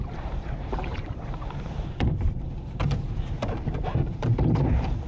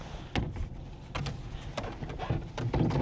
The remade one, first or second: first